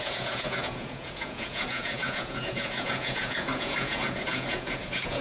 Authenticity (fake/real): fake